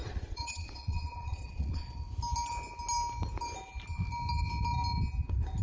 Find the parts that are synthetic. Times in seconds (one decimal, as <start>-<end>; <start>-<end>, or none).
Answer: 0.0-2.0